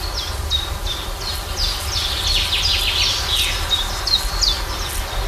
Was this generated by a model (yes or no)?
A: no